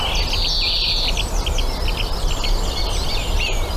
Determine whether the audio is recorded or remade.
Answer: recorded